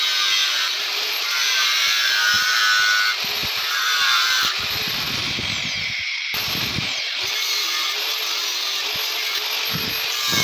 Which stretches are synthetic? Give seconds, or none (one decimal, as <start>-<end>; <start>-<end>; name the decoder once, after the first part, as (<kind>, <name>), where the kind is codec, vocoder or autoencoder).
0.4-2.6 (vocoder, BigVGAN v2); 3.4-8.1

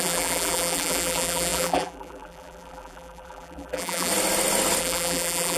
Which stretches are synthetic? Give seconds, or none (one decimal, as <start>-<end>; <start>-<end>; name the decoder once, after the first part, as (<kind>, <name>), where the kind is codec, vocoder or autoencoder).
0.0-4.1 (vocoder, BigVGAN v2); 4.8-5.6

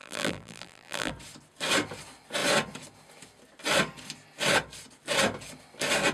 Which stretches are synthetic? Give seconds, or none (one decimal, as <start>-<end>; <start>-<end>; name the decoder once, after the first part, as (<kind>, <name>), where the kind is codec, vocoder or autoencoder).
0.0-1.1 (vocoder, BigVGAN v2)

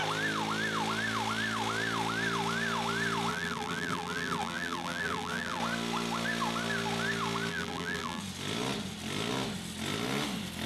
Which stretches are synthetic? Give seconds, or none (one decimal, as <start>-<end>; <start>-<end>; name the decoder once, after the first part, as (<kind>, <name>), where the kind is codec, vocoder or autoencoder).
3.3-5.6 (vocoder, BigVGAN v2); 7.5-8.2

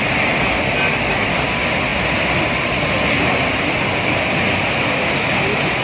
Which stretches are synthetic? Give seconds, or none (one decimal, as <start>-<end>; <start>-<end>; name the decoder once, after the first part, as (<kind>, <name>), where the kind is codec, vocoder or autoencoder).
none

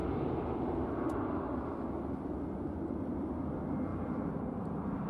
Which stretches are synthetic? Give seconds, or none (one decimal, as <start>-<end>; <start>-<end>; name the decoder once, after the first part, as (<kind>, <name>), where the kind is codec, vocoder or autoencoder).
none

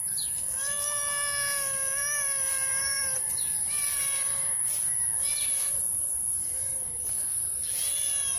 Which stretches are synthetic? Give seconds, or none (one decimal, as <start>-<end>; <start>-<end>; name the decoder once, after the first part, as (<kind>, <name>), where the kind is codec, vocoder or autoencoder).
2.0-4.4 (vocoder, BigVGAN v2); 5.2-5.7; 6.3-8.4

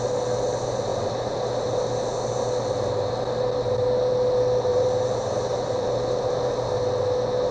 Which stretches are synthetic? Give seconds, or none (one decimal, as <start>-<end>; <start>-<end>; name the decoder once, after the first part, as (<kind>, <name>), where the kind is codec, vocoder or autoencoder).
4.7-6.5 (vocoder, BigVGAN v2)